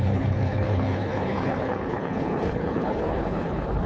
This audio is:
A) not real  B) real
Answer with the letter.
A